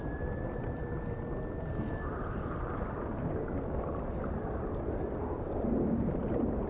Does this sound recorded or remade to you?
recorded